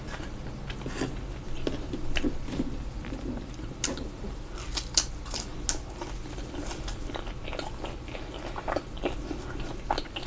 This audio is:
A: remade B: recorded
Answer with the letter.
B